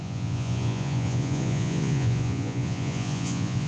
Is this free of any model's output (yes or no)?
no